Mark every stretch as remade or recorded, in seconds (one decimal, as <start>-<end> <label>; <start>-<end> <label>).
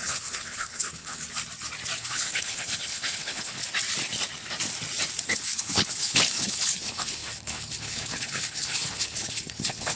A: 0.0-1.2 remade; 1.2-2.0 recorded; 2.0-3.6 remade; 3.6-5.2 recorded; 5.2-10.0 remade